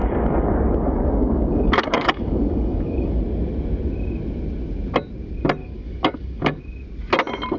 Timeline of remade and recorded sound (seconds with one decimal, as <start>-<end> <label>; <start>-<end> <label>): 0.0-3.2 remade; 3.2-5.6 recorded; 5.6-6.6 remade; 6.6-7.6 recorded